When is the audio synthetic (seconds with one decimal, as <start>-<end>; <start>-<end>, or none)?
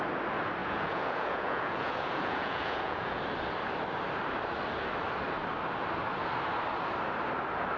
0.6-3.2